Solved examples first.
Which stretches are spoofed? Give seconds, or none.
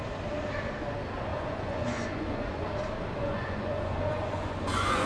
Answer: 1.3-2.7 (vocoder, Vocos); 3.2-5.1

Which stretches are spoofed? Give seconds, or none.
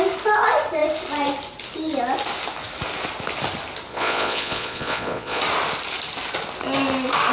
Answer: 3.9-5.4 (vocoder, Vocos)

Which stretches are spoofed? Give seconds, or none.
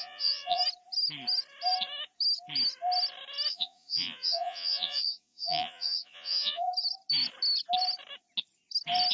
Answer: 0.0-0.6 (vocoder, Vocos); 3.5-6.7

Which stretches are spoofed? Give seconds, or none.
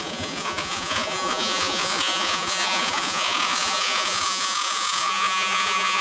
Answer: 0.0-6.0 (vocoder, Vocos)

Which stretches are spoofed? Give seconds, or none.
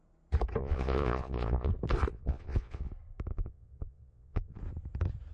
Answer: 0.6-1.7 (vocoder, Vocos); 2.1-2.9; 3.3-4.6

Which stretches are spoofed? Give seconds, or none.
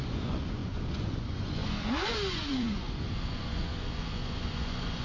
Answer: 0.0-5.0 (vocoder, Vocos)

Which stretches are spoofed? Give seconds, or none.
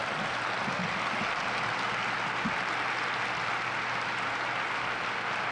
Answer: none